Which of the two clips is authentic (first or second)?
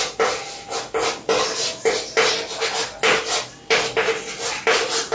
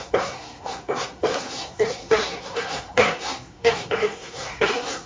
first